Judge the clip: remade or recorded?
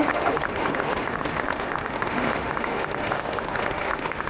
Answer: remade